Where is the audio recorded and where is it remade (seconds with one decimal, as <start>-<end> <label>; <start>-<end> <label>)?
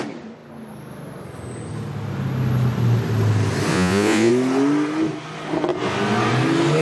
0.0-3.7 recorded; 3.7-4.3 remade; 4.3-6.8 recorded